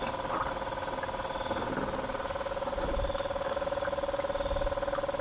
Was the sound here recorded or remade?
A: recorded